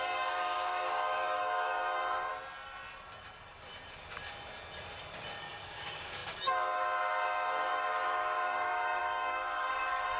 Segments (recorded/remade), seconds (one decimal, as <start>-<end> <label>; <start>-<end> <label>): 0.0-2.3 remade; 2.3-5.4 recorded; 5.4-10.2 remade

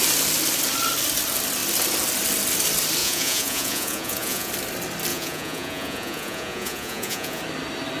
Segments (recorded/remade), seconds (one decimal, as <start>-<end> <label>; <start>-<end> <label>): 0.0-3.0 recorded; 3.0-4.5 remade; 4.5-5.1 recorded; 5.1-7.4 remade; 7.4-8.0 recorded

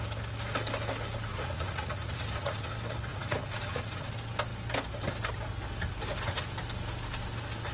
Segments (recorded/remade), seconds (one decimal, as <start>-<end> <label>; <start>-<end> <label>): 0.0-1.3 recorded; 1.3-2.7 remade; 2.7-3.1 recorded; 3.1-4.1 remade; 4.1-7.7 recorded

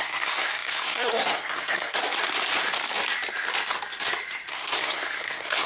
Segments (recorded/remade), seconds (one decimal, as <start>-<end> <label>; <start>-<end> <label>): 0.0-2.0 remade; 2.0-4.5 recorded; 4.5-5.7 remade

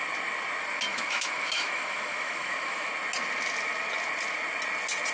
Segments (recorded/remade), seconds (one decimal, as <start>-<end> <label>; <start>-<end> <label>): 0.0-0.9 recorded; 0.9-2.9 remade; 2.9-5.1 recorded

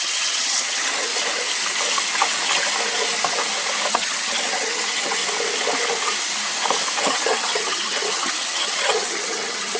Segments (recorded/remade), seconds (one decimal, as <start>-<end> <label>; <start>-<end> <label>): 0.0-1.1 remade; 1.1-3.9 recorded; 3.9-5.2 remade; 5.2-7.0 recorded; 7.0-9.8 remade